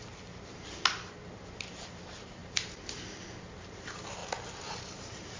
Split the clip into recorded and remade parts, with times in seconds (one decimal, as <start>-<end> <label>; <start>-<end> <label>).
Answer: 0.0-1.7 recorded; 1.7-2.4 remade; 2.4-3.5 recorded; 3.5-4.2 remade; 4.2-4.8 recorded; 4.8-5.4 remade